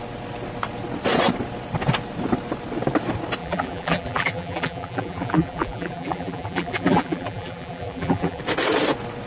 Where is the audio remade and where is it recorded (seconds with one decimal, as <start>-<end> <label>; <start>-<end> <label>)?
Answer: 0.0-3.4 recorded; 3.4-8.4 remade; 8.4-9.3 recorded